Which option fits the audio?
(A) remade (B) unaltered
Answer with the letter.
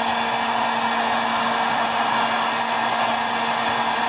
B